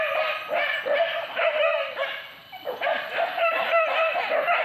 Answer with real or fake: real